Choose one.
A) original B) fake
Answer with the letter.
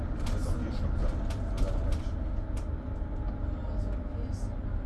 A